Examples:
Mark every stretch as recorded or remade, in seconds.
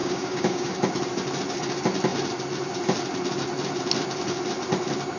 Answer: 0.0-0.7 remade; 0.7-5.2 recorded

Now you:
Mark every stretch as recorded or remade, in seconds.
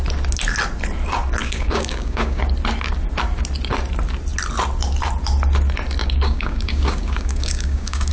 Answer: 0.0-1.4 recorded; 1.4-2.4 remade; 2.4-6.0 recorded; 6.0-8.1 remade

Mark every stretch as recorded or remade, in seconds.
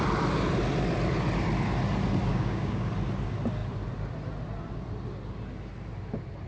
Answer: 0.0-2.3 recorded; 2.3-2.9 remade; 2.9-6.5 recorded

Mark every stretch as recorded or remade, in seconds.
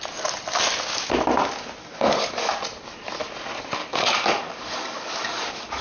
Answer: 0.0-1.8 recorded; 1.8-2.5 remade; 2.5-3.8 recorded; 3.8-5.8 remade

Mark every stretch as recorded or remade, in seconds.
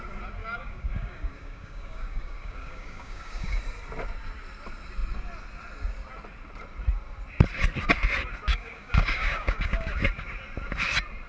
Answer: 0.0-0.4 recorded; 0.4-3.6 remade; 3.6-8.5 recorded; 8.5-9.9 remade; 9.9-11.3 recorded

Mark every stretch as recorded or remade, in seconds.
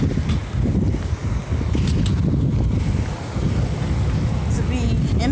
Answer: 0.0-5.3 recorded